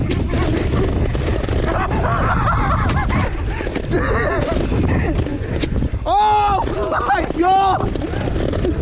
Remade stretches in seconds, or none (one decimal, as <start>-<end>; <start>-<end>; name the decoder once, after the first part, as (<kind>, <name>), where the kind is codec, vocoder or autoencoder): 5.3-5.9 (vocoder, Vocos)